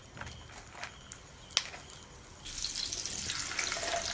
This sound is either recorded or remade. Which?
recorded